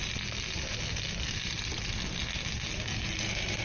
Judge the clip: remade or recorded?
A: recorded